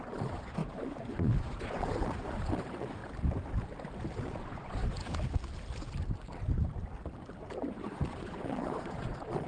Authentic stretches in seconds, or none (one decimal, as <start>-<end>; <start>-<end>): 3.0-4.2; 4.8-7.8